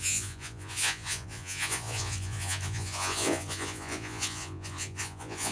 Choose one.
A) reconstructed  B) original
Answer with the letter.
A